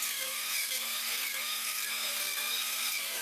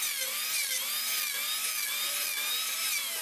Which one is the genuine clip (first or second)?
second